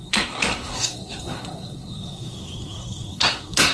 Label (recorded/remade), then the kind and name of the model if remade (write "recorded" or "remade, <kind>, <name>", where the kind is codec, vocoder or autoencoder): remade, codec, SNAC